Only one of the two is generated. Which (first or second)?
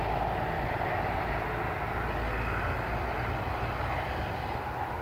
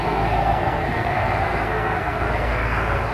second